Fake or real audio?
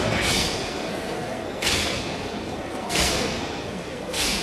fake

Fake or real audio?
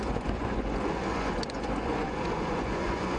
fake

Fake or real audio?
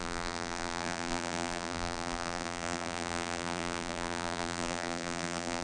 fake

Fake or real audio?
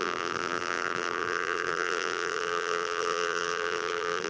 fake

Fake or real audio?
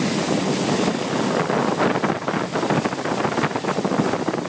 real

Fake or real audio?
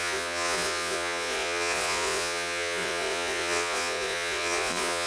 fake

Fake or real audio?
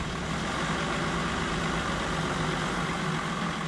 real